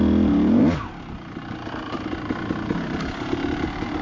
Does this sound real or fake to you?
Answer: real